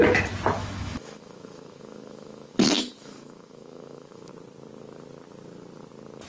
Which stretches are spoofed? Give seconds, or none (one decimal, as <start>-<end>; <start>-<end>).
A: 0.6-4.3